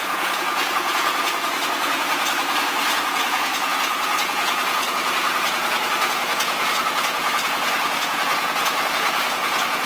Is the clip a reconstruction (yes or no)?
yes